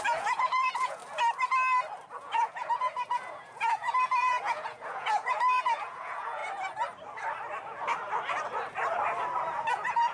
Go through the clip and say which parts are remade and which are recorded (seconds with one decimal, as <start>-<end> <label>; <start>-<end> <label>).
0.0-1.0 remade; 1.0-2.1 recorded; 2.1-6.4 remade; 6.4-9.7 recorded; 9.7-10.1 remade